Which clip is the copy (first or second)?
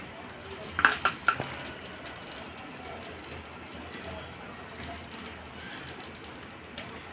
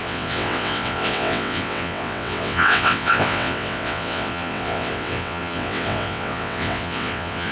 second